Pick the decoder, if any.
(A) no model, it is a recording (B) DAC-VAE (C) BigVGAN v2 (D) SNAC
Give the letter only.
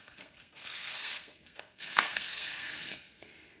D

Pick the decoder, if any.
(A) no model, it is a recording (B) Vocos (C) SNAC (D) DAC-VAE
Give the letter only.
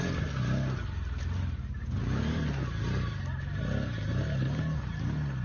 A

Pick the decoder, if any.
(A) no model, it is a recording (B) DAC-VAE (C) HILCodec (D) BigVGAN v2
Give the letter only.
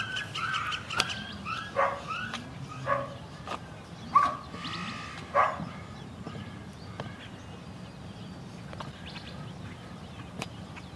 A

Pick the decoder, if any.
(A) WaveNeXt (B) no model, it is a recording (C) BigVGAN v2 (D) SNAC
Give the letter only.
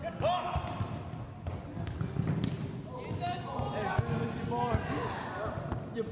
B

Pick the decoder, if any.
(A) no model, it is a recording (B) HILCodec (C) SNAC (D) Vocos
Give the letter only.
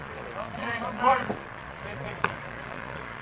D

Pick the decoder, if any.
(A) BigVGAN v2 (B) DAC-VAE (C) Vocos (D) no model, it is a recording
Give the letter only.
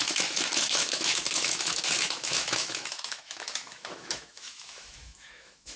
B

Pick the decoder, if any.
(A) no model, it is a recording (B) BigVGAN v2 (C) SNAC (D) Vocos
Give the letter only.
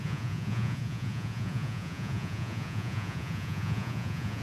D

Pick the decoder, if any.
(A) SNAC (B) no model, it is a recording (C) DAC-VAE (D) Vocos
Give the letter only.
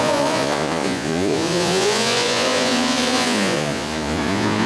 D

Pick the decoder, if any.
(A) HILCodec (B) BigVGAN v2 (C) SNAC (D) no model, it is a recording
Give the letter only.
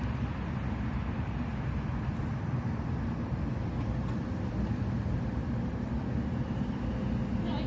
D